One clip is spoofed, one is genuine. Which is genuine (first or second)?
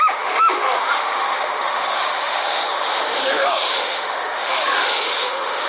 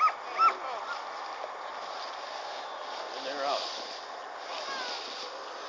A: second